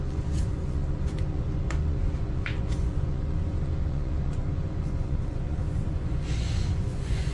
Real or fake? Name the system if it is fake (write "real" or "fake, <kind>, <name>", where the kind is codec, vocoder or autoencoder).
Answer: fake, vocoder, Vocos